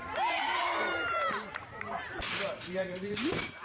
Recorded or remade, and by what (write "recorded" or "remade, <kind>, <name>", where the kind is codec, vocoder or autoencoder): remade, vocoder, BigVGAN v2